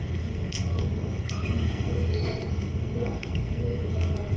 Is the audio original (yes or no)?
no